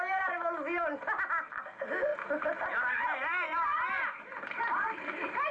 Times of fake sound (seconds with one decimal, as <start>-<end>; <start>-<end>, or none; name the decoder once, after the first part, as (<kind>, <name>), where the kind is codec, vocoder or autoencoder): none